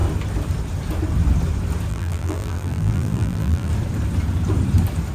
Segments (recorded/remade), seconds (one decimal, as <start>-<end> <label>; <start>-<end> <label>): 0.0-1.9 recorded; 1.9-3.7 remade; 3.7-5.1 recorded